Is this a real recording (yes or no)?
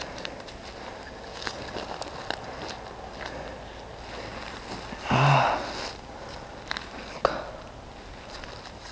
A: yes